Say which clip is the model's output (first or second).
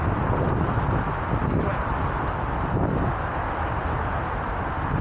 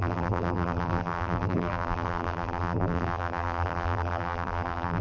second